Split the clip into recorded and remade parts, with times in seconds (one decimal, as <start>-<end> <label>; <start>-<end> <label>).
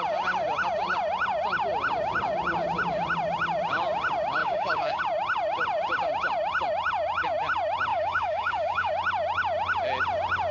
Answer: 0.0-4.4 recorded; 4.4-5.0 remade; 5.0-7.9 recorded; 7.9-8.9 remade; 8.9-10.5 recorded